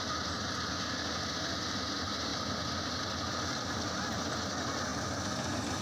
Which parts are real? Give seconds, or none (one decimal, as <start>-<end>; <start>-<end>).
0.0-5.8